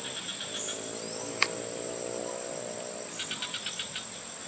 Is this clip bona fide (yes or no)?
yes